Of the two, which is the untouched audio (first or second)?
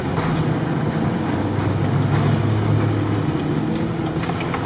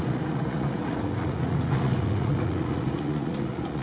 first